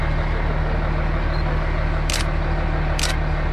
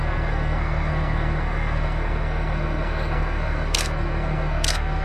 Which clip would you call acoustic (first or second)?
first